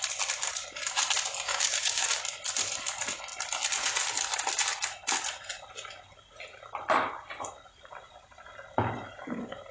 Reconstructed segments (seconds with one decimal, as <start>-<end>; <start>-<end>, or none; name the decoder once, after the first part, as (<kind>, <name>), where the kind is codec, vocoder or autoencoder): 1.5-2.2 (codec, DAC)